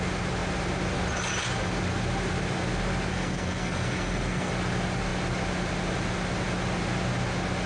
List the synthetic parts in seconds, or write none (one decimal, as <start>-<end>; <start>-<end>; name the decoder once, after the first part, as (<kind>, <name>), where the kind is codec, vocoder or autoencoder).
3.1-4.5 (codec, SNAC)